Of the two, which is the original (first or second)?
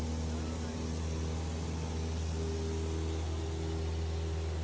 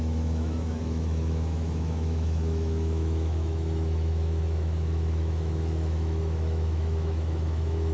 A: first